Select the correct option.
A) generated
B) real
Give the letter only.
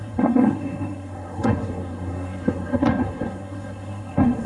A